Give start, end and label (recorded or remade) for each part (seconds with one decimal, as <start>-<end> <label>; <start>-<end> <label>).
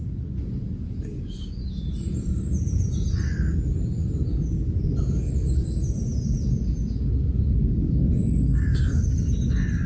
0.0-9.9 recorded